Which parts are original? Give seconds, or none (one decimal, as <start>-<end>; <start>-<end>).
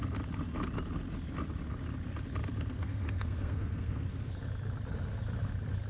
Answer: 0.0-2.7; 4.3-5.9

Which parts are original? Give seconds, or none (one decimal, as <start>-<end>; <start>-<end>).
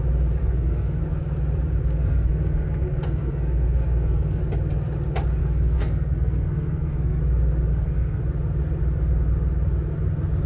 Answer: 0.0-0.4; 1.0-1.8; 4.4-5.4; 7.2-7.7; 8.2-10.5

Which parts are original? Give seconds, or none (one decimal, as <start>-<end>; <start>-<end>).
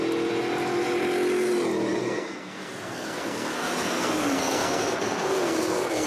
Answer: 0.0-2.0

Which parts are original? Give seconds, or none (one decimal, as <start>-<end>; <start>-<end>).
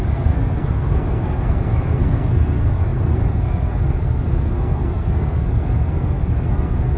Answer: none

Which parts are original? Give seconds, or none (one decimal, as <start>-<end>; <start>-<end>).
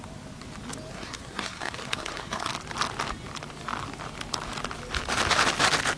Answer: 0.0-0.9; 2.5-6.0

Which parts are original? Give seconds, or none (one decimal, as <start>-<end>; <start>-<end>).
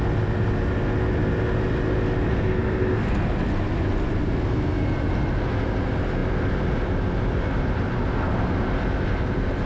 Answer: 0.0-2.3; 3.1-9.7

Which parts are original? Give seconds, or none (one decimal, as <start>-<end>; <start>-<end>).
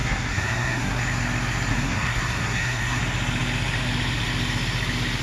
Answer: 1.0-1.7; 3.0-5.2